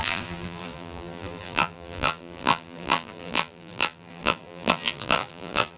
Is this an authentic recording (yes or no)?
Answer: no